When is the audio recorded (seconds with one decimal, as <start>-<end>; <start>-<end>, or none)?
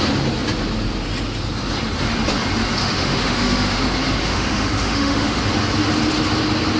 0.0-2.8; 3.8-4.2; 5.4-6.8